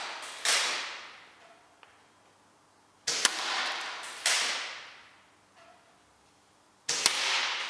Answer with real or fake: real